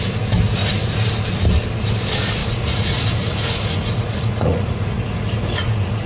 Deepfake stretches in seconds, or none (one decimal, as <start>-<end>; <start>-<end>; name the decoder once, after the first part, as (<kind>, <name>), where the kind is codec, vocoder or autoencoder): 2.4-6.1 (vocoder, Vocos)